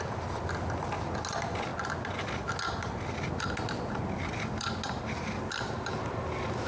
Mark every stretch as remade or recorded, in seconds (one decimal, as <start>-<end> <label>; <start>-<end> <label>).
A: 0.0-6.7 recorded